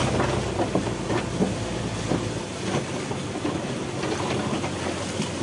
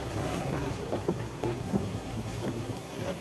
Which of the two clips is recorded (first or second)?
first